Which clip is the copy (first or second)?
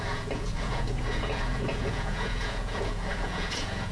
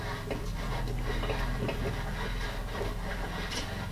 first